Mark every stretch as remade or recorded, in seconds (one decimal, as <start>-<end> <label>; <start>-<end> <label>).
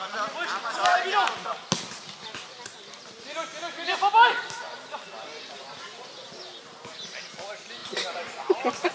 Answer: 0.0-8.9 recorded